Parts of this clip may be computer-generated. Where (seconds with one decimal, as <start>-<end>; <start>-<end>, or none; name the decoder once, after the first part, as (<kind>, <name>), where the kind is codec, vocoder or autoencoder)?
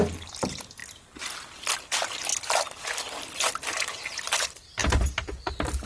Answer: none